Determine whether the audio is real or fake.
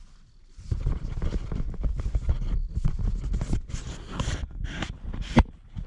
real